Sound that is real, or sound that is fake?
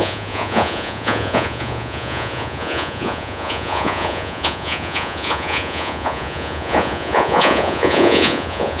fake